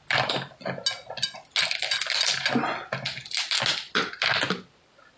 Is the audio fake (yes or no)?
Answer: no